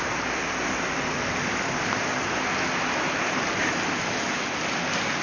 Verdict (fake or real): real